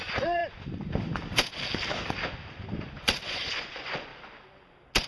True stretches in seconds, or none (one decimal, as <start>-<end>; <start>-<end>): 0.4-2.9; 4.1-5.1